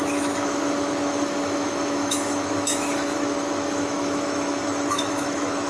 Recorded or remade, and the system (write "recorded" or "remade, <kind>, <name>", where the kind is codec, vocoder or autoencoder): remade, autoencoder, DAC-VAE